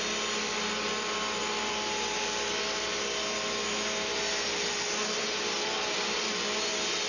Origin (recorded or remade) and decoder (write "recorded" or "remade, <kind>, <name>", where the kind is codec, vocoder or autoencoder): recorded